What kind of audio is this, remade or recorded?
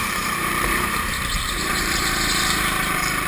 remade